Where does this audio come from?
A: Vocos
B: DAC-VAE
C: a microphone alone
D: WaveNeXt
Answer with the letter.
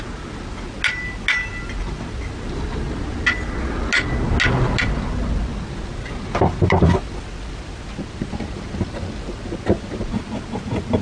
C